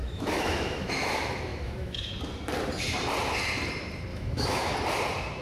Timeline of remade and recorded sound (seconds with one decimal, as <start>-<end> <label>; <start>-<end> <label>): 0.0-1.1 remade; 1.1-1.5 recorded; 1.5-2.1 remade; 2.1-4.1 recorded; 4.1-4.7 remade; 4.7-5.4 recorded